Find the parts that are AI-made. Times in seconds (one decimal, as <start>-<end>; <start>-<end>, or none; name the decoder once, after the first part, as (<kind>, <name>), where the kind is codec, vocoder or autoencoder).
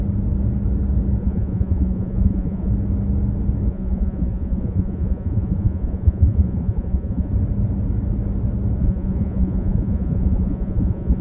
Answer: 1.2-2.7 (vocoder, Vocos); 3.7-7.3; 8.8-11.2